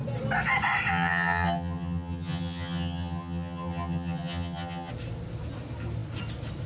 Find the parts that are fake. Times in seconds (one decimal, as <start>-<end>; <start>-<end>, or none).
0.9-4.9

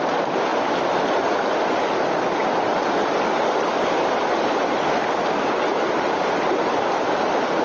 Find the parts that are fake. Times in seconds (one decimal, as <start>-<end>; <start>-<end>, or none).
none

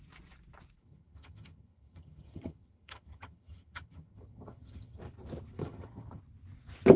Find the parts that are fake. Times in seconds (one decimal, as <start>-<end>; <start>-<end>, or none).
0.8-5.0; 5.6-6.2

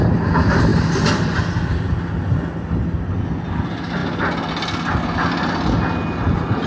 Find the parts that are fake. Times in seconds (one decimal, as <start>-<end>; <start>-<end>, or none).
none

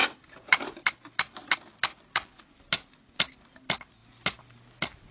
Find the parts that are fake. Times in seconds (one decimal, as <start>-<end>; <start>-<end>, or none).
none

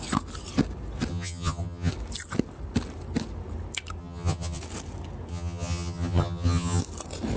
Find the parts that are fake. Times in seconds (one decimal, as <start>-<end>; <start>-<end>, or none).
1.1-1.9; 4.0-4.6; 5.3-6.8

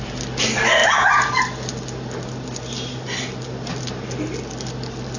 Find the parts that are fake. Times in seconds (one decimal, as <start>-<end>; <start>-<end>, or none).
none